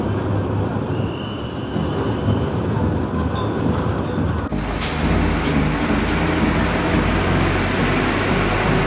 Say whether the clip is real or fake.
real